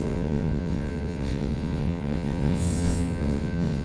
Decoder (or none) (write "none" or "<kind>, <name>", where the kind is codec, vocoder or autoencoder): vocoder, WaveNeXt